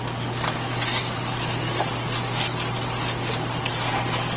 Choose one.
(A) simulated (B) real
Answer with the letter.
B